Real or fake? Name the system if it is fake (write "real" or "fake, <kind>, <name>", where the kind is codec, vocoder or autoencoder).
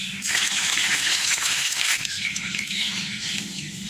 fake, autoencoder, DAC-VAE